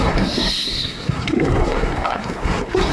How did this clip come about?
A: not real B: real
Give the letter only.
A